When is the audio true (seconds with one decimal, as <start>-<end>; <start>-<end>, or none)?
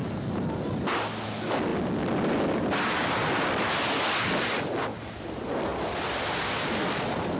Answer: 0.0-7.4